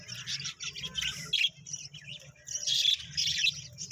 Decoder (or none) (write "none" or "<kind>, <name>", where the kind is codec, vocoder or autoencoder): none